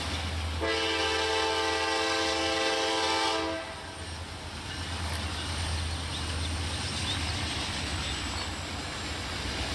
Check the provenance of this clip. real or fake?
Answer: real